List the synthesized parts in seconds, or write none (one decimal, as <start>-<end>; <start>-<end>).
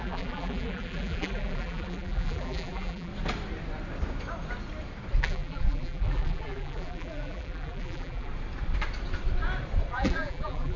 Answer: 0.0-3.1; 5.2-8.3; 9.9-10.8